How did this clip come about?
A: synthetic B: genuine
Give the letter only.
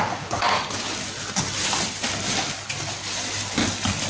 B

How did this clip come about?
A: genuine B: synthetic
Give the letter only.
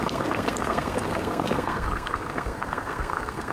B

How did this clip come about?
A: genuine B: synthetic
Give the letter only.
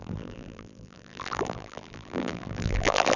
B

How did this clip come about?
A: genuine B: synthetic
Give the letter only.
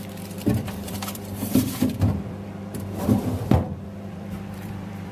B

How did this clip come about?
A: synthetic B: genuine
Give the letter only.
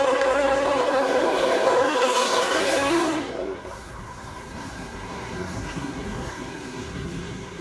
A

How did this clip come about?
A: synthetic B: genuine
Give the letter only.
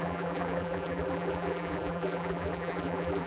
A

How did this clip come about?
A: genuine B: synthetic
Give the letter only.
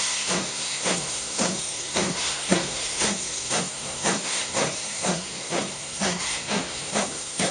B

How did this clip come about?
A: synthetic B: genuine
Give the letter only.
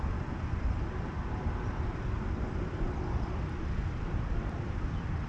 B